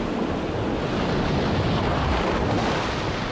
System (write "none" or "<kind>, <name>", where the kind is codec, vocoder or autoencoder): none